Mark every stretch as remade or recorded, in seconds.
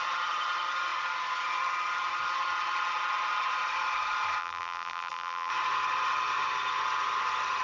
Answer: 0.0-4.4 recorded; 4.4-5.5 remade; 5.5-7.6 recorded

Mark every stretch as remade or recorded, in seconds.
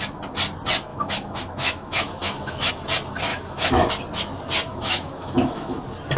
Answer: 0.0-0.9 recorded; 0.9-2.7 remade; 2.7-3.3 recorded; 3.3-3.9 remade; 3.9-4.7 recorded; 4.7-5.8 remade; 5.8-6.2 recorded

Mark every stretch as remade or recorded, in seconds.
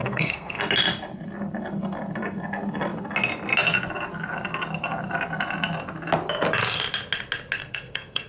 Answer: 0.0-0.6 remade; 0.6-7.6 recorded; 7.6-8.3 remade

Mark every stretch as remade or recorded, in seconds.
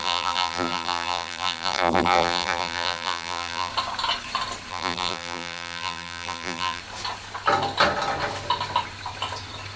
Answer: 0.0-3.7 remade; 3.7-4.7 recorded; 4.7-6.8 remade; 6.8-9.8 recorded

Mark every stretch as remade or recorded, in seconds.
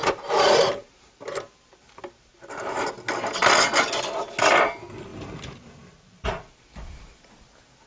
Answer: 0.0-2.9 remade; 2.9-5.1 recorded; 5.1-6.3 remade; 6.3-7.9 recorded